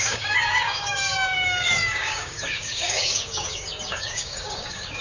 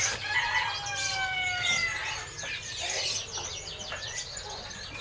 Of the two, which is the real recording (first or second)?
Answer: second